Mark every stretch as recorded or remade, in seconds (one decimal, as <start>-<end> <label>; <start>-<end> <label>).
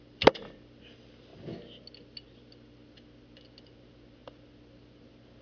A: 0.0-5.4 recorded